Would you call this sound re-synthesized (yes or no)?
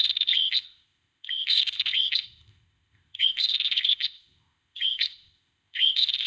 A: yes